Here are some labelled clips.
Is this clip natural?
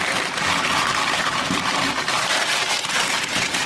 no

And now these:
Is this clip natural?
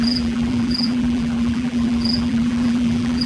no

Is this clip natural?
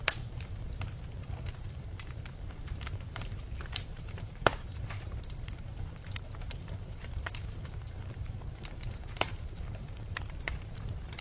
no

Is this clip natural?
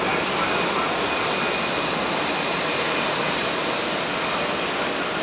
yes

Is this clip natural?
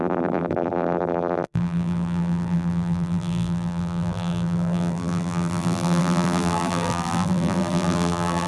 no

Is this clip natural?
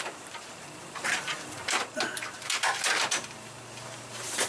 no